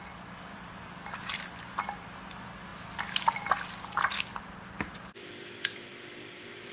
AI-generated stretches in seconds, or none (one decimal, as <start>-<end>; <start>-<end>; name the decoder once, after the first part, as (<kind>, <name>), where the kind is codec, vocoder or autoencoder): none